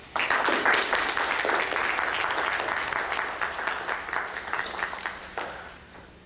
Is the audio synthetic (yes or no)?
no